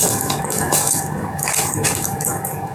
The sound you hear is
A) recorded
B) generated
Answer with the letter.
B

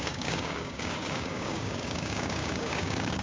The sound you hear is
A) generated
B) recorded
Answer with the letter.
A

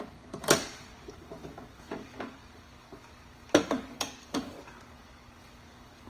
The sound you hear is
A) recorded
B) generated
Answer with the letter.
B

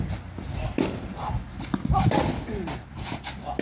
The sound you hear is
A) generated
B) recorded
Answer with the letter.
B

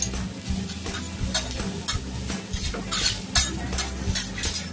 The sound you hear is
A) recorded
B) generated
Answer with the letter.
A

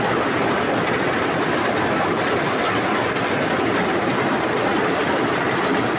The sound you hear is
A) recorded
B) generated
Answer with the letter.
A